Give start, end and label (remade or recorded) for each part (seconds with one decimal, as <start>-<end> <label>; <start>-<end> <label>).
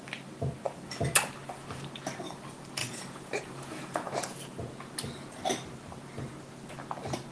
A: 0.0-2.8 recorded; 2.8-4.7 remade; 4.7-7.3 recorded